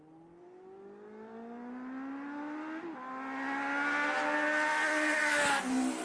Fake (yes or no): no